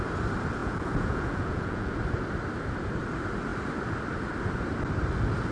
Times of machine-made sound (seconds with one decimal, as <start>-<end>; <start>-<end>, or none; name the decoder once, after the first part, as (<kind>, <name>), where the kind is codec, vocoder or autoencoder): 0.6-1.9 (vocoder, Vocos)